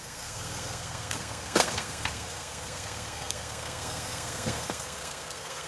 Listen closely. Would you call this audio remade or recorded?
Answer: remade